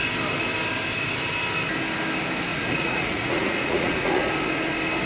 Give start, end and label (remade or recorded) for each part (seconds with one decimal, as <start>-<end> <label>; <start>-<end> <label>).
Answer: 0.0-2.5 recorded; 2.5-4.2 remade; 4.2-5.1 recorded